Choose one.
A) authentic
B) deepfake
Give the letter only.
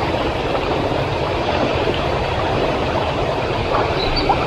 B